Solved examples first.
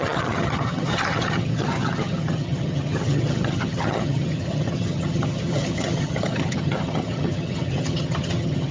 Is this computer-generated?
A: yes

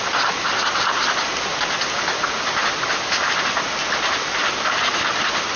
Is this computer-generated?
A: no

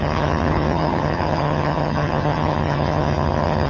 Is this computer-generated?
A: yes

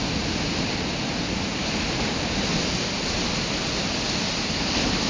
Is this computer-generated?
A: no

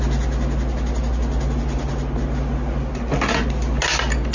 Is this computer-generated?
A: no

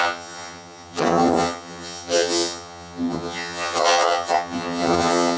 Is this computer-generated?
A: yes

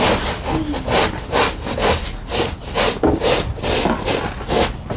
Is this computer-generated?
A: no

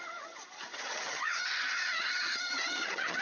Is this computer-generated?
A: yes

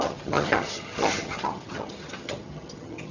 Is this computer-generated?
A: yes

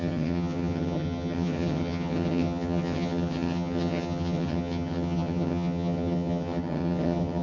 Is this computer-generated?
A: yes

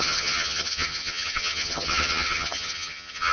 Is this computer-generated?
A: yes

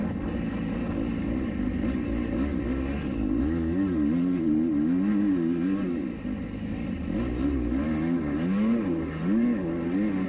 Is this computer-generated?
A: no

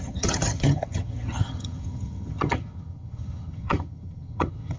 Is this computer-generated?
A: yes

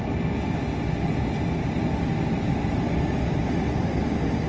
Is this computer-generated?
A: no